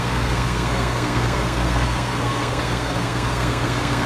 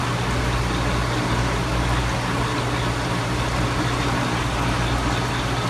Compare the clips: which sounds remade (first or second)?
first